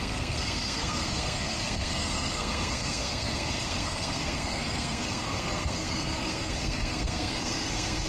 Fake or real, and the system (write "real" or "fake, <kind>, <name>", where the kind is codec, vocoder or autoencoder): fake, codec, SNAC